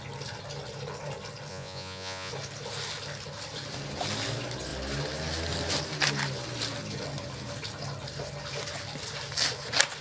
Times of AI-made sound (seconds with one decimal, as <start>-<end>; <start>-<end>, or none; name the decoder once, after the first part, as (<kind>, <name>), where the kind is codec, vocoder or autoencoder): 1.5-2.3 (vocoder, Vocos)